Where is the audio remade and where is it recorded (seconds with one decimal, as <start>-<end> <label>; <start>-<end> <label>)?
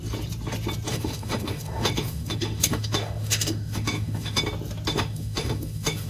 0.0-0.9 recorded; 0.9-4.4 remade; 4.4-4.9 recorded; 4.9-6.1 remade